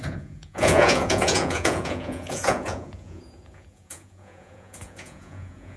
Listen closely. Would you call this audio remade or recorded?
remade